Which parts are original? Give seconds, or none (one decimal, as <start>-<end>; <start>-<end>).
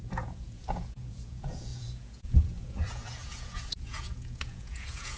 none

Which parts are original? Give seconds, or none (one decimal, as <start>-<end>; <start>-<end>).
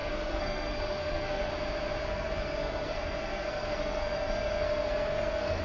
1.5-2.0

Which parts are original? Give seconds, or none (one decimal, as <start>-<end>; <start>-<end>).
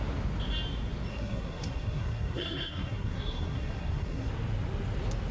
0.0-1.1; 4.3-5.3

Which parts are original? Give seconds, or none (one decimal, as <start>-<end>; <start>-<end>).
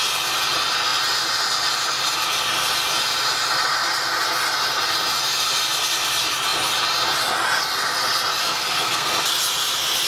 0.0-8.4; 9.1-10.1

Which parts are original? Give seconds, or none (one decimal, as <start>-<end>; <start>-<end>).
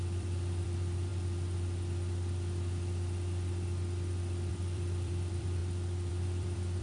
1.1-4.5; 5.6-6.1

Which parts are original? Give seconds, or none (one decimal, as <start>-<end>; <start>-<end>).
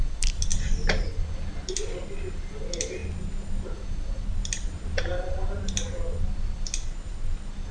0.0-7.7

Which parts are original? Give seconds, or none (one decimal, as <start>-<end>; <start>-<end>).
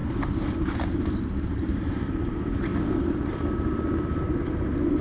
2.7-4.2